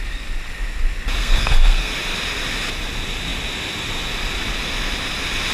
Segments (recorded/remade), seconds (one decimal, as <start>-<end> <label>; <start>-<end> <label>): 0.0-1.2 recorded; 1.2-1.9 remade; 1.9-5.5 recorded